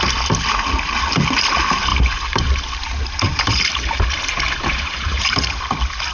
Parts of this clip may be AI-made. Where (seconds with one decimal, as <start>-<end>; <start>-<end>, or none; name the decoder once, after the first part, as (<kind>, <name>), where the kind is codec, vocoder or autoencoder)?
1.9-5.6 (vocoder, BigVGAN v2)